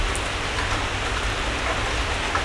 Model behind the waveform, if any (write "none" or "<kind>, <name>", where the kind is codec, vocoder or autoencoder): none